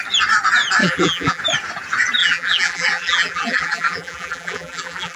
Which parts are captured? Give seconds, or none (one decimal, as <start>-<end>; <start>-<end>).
0.0-0.8; 1.4-2.2